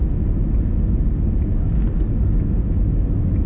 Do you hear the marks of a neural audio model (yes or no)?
no